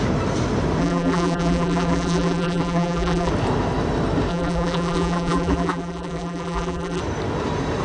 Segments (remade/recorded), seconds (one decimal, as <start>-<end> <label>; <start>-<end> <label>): 0.0-0.8 recorded; 0.8-3.3 remade; 3.3-4.3 recorded; 4.3-7.0 remade; 7.0-7.8 recorded